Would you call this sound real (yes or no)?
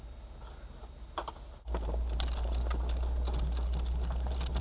yes